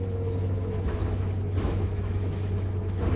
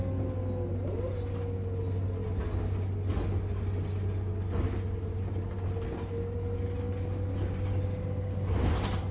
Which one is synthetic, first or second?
first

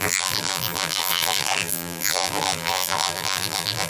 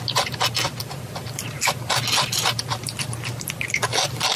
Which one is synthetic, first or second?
first